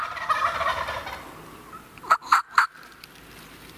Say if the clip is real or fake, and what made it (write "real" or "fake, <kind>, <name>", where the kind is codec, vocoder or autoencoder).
real